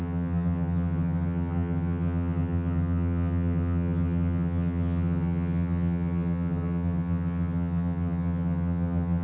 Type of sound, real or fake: fake